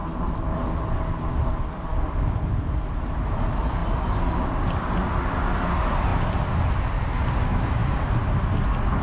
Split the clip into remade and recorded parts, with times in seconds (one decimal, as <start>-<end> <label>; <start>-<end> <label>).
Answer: 0.0-9.0 recorded